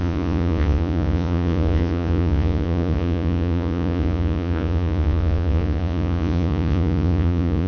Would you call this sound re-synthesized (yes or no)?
yes